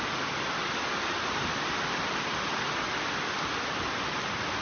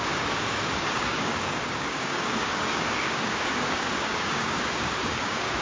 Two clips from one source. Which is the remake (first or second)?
second